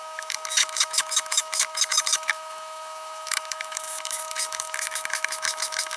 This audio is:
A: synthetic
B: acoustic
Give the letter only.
A